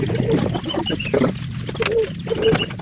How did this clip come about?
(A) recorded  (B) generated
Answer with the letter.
A